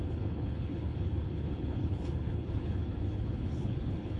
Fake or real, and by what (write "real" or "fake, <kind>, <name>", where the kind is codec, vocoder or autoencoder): fake, codec, HILCodec